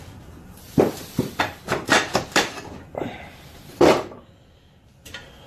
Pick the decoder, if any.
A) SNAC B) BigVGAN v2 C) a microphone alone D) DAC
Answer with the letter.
B